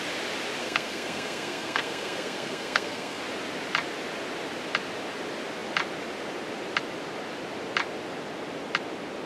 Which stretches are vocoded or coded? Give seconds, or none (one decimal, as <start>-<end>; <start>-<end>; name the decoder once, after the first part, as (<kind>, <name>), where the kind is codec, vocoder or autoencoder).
0.6-3.2 (codec, SNAC)